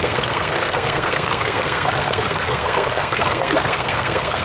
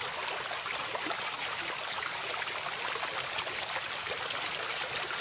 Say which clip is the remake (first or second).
first